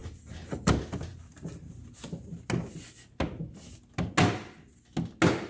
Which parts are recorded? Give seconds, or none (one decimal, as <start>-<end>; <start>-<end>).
0.7-5.5